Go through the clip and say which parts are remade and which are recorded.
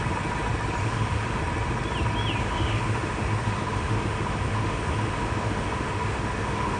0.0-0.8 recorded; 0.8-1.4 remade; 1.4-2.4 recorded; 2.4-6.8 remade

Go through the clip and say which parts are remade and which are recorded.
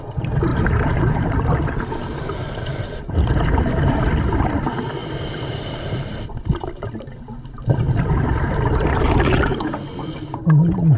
0.0-0.5 recorded; 0.5-1.3 remade; 1.3-2.1 recorded; 2.1-4.1 remade; 4.1-5.0 recorded; 5.0-9.2 remade; 9.2-11.0 recorded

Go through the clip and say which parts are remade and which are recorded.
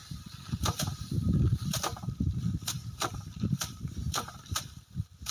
0.0-5.3 remade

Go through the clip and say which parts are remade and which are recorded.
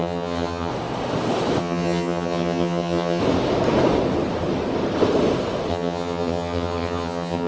0.0-0.7 remade; 0.7-1.6 recorded; 1.6-3.2 remade; 3.2-5.7 recorded; 5.7-7.5 remade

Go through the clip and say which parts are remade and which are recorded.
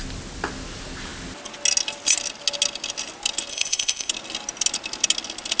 0.0-3.5 recorded; 3.5-4.1 remade; 4.1-5.6 recorded